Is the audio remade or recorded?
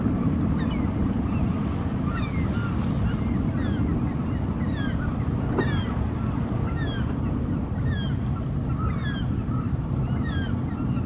recorded